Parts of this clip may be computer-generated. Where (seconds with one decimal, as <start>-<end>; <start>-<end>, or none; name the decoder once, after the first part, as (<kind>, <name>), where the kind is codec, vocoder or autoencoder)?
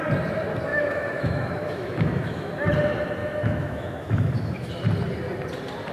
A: 0.7-2.5 (autoencoder, DAC-VAE); 3.2-4.7